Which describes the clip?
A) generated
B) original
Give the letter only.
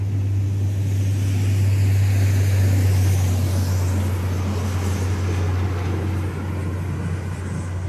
B